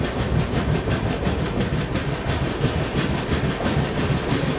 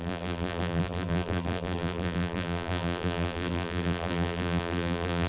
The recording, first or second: first